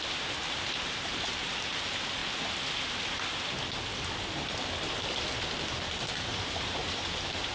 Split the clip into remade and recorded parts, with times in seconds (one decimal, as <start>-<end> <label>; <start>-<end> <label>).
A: 0.0-0.4 remade; 0.4-1.5 recorded; 1.5-2.2 remade; 2.2-5.7 recorded; 5.7-7.5 remade